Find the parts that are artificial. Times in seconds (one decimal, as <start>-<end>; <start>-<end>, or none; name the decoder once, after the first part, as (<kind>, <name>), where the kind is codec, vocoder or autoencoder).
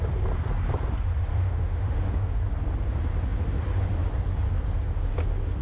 1.3-2.4 (autoencoder, DAC-VAE)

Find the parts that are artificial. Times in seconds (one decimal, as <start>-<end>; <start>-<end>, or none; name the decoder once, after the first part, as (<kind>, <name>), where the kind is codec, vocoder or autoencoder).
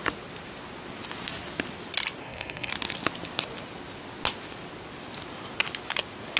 2.2-2.7 (codec, SNAC)